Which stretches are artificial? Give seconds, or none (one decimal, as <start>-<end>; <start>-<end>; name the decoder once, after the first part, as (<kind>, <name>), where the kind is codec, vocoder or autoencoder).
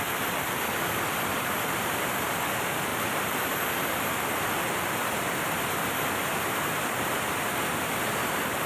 2.9-3.4 (vocoder, BigVGAN v2)